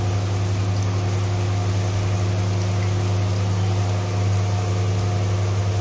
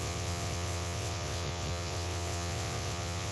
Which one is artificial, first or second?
second